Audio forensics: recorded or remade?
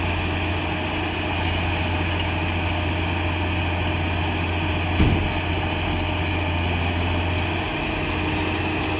recorded